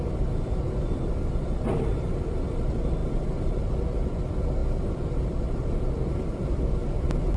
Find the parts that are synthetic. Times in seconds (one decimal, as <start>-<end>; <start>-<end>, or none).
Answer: 0.0-3.0; 3.5-6.8